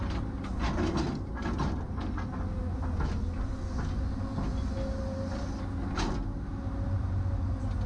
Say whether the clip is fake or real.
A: real